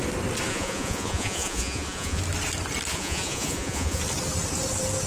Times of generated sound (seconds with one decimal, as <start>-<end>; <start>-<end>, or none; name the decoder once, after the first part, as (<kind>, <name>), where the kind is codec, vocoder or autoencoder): 0.5-2.2 (vocoder, Vocos); 2.9-4.0